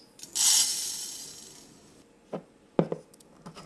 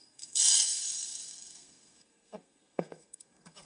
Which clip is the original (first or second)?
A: first